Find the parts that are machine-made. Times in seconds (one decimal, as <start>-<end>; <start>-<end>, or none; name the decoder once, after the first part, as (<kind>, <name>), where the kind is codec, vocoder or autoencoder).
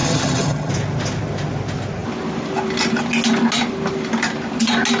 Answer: 0.0-0.7 (vocoder, HiFi-GAN)